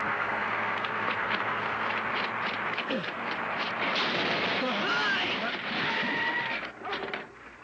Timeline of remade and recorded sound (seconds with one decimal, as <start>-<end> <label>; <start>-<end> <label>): 0.0-1.9 remade; 1.9-2.8 recorded; 2.8-3.3 remade; 3.3-7.6 recorded